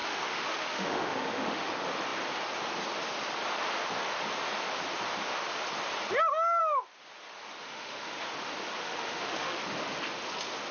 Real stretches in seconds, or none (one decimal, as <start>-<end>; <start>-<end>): 1.7-7.6; 8.2-8.8; 9.6-10.7